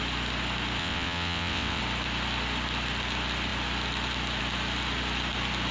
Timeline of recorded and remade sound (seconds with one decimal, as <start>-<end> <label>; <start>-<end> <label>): 0.0-0.8 recorded; 0.8-1.8 remade; 1.8-5.7 recorded